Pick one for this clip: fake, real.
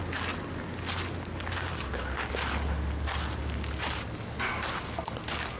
real